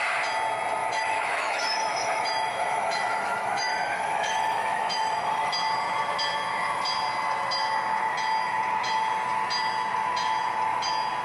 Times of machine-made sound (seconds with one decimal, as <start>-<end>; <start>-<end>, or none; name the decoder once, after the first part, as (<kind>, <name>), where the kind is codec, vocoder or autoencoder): 0.8-5.5 (autoencoder, DAC-VAE)